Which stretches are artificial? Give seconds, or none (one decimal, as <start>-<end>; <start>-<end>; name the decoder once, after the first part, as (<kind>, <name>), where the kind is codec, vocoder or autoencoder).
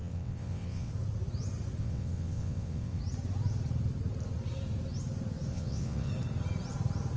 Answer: 0.0-0.9 (vocoder, WaveNeXt); 1.8-3.0; 5.5-6.1